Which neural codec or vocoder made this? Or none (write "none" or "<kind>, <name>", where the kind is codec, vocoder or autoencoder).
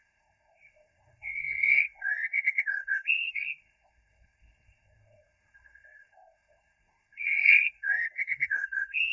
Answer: codec, SNAC